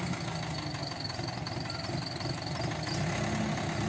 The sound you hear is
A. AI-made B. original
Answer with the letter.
B